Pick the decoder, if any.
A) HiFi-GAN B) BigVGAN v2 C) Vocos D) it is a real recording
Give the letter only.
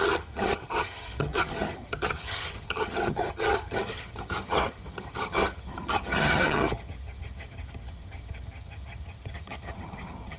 A